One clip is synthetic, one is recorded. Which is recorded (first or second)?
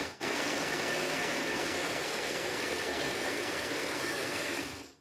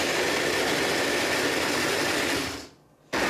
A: second